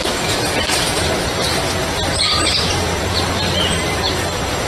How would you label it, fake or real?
fake